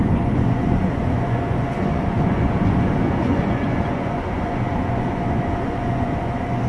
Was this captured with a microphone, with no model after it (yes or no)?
no